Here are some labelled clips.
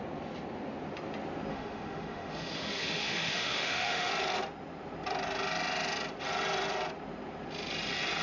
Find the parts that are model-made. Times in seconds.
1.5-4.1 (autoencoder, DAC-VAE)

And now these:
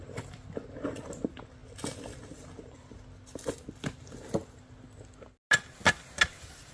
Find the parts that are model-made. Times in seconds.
none